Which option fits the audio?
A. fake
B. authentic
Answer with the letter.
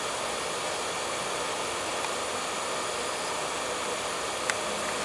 B